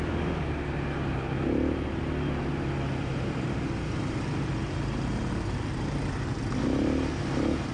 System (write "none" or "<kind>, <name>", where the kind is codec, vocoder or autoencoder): none